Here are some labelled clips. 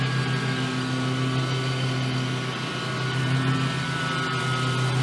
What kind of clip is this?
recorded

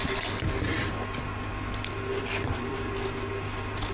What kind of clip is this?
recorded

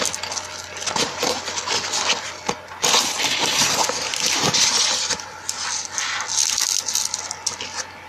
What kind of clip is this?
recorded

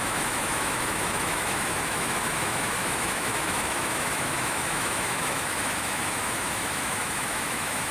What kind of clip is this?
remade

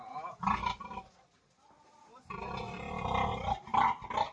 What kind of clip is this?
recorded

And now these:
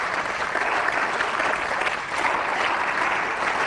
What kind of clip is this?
recorded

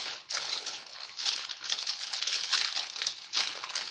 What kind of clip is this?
remade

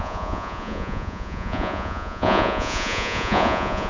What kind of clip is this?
remade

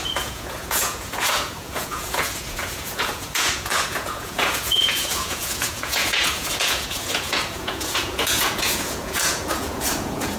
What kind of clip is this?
remade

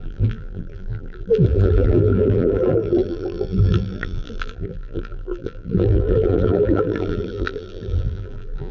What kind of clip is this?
remade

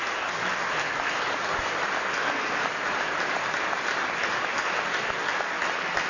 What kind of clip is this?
recorded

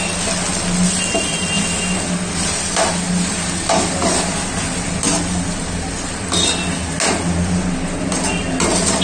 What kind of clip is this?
recorded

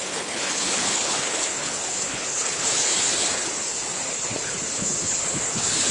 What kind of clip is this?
remade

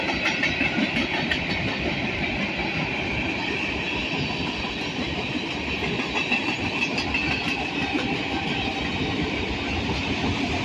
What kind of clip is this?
recorded